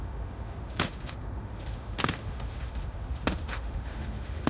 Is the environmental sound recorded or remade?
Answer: remade